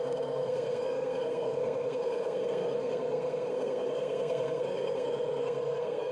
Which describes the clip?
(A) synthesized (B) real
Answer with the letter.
A